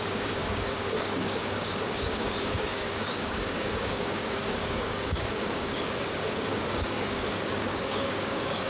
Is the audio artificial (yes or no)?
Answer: yes